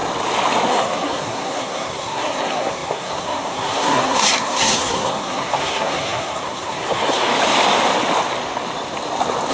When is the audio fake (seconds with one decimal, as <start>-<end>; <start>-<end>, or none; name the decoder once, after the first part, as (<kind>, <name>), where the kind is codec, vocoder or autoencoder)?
0.7-7.3 (codec, SNAC)